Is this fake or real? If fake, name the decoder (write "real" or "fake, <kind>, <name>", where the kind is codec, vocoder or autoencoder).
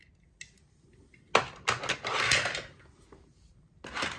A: real